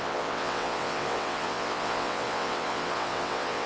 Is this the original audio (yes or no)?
no